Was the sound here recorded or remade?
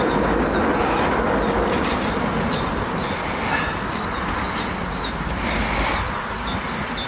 recorded